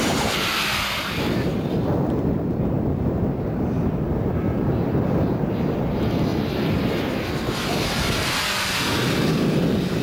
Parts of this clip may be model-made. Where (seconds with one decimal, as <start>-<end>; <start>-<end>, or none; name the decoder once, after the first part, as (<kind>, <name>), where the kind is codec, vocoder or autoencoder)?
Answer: none